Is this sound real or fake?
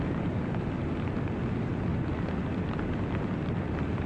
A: real